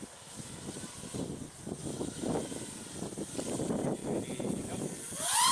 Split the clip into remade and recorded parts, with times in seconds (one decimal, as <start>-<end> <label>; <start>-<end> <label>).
0.0-1.8 recorded; 1.8-2.4 remade; 2.4-5.5 recorded